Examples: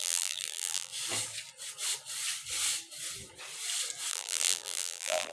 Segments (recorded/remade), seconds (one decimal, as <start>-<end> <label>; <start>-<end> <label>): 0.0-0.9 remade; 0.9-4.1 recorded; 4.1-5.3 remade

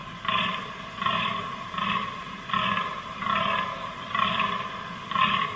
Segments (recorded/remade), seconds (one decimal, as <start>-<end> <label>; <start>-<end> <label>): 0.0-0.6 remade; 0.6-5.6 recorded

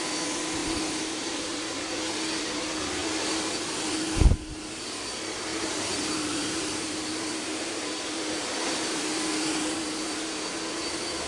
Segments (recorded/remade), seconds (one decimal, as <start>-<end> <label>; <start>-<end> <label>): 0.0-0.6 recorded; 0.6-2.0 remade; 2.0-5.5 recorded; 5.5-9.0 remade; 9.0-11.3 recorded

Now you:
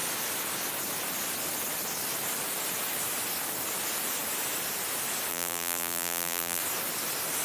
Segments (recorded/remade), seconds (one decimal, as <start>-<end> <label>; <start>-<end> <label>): 0.0-5.3 recorded; 5.3-6.6 remade; 6.6-7.4 recorded

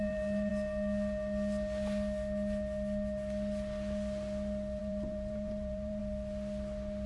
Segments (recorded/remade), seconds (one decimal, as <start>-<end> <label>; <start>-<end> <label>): 0.0-0.5 remade; 0.5-4.8 recorded; 4.8-6.0 remade; 6.0-7.1 recorded